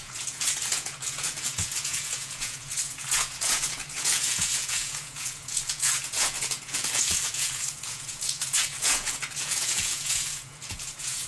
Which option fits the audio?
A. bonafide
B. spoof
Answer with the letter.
B